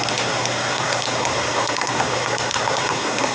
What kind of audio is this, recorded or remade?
remade